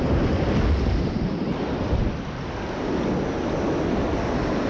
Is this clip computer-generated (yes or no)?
no